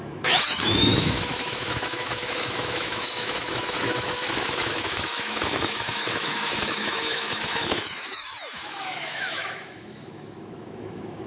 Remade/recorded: remade